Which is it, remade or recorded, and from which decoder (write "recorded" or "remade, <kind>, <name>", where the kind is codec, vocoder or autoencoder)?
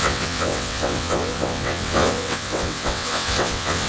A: remade, vocoder, WaveNeXt